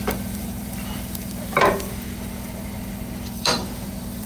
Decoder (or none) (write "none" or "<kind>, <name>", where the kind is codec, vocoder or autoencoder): vocoder, BigVGAN v2